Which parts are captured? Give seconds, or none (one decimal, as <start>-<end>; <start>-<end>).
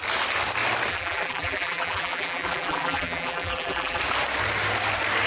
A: 0.0-0.9; 4.0-5.3